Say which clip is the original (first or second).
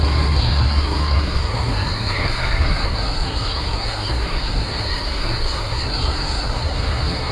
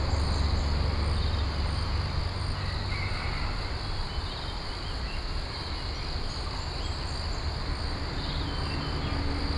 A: second